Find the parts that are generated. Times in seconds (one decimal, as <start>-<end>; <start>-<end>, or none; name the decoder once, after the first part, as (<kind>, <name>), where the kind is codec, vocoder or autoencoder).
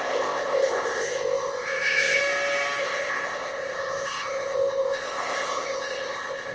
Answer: 0.0-2.2 (codec, ZipCodec); 2.8-6.5